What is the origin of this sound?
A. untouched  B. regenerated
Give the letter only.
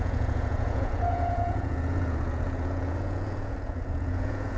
B